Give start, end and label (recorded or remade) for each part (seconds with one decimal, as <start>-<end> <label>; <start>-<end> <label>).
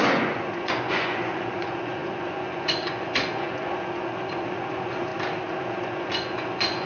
0.0-5.1 remade; 5.1-5.6 recorded; 5.6-6.9 remade